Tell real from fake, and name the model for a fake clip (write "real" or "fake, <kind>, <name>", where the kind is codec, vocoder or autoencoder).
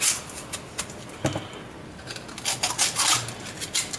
real